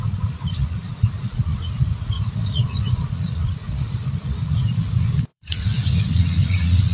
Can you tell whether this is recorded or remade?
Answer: remade